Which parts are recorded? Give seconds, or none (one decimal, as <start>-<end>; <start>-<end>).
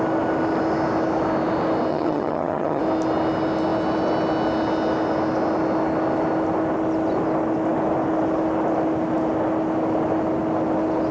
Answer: 0.0-1.9; 2.8-11.1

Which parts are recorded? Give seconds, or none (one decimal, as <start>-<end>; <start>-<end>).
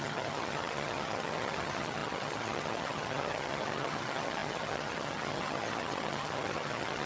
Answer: none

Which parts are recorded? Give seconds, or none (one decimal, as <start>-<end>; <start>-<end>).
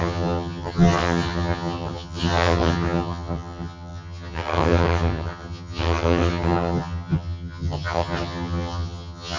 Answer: none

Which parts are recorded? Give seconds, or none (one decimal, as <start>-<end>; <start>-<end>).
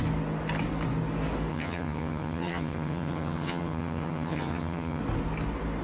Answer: 0.0-1.5; 5.0-5.8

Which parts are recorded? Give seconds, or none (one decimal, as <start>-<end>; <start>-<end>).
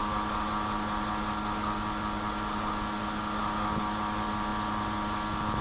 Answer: 0.0-5.6